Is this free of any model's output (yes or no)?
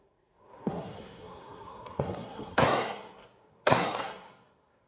no